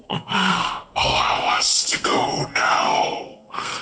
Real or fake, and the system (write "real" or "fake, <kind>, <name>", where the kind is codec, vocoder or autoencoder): fake, codec, SNAC